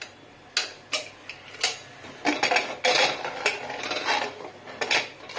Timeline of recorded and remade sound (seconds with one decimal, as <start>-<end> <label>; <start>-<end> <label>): 0.0-5.4 recorded